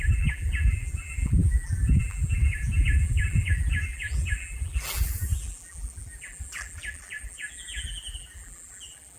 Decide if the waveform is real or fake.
fake